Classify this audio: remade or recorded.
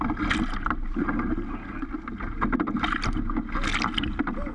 recorded